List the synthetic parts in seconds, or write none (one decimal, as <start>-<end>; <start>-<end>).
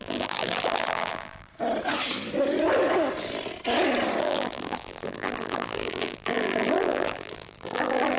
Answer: 0.0-1.5; 4.2-8.2